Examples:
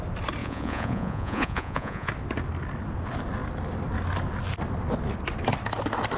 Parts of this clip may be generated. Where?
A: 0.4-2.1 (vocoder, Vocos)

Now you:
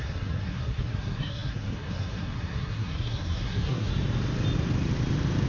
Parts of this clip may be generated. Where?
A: 0.0-3.9 (codec, SNAC)

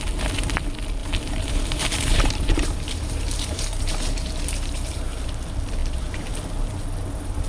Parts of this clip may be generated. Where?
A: 1.0-5.3 (vocoder, BigVGAN v2); 5.8-6.3

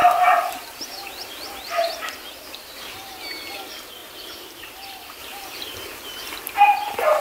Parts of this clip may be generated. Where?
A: 0.0-2.1 (vocoder, BigVGAN v2); 4.0-4.7; 5.2-6.6

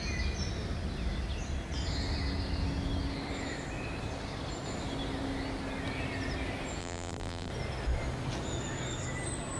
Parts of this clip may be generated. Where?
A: 6.8-7.5 (vocoder, BigVGAN v2)

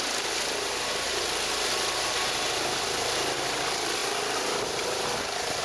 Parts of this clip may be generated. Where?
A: none